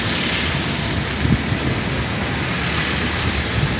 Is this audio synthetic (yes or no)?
no